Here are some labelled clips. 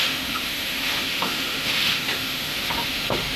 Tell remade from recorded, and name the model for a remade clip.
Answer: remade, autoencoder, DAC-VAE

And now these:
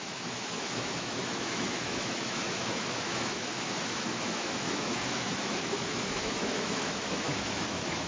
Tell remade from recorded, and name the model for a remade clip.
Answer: remade, autoencoder, DAC-VAE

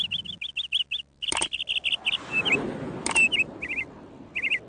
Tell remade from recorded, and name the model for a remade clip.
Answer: recorded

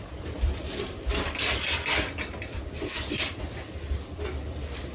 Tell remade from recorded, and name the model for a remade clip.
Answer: recorded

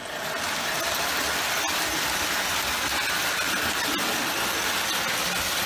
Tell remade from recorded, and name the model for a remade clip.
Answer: recorded